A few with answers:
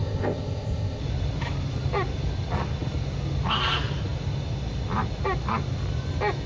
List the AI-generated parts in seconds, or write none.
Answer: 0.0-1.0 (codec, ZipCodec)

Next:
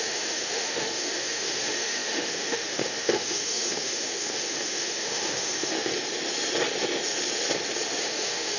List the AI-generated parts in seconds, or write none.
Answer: 0.0-5.9 (autoencoder, DAC-VAE); 8.0-8.6

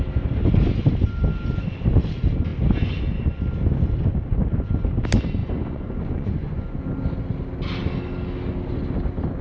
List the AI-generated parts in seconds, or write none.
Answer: 5.4-6.8 (vocoder, Vocos)

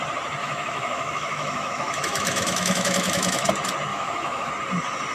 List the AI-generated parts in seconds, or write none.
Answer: 0.4-3.5 (autoencoder, DAC-VAE); 3.9-4.5

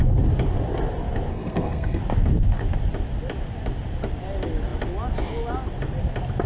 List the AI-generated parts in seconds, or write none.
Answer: 1.3-2.0 (codec, SNAC)

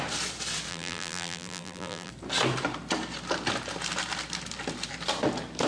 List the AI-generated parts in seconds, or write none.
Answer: 0.7-2.1 (vocoder, BigVGAN v2)

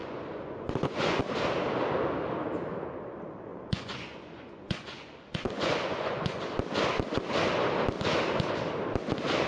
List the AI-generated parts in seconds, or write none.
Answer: 0.0-1.2 (vocoder, Vocos); 3.5-6.4

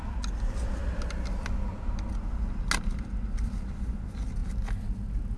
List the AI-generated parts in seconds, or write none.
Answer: none